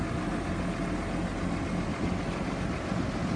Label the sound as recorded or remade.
recorded